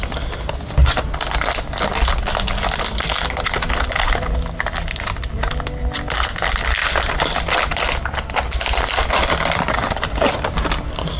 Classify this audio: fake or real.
real